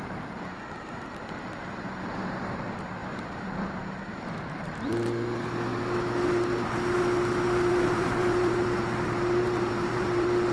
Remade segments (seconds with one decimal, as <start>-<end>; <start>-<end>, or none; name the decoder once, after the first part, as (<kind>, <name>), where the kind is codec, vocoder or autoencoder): 0.0-5.7 (vocoder, BigVGAN v2); 7.7-10.5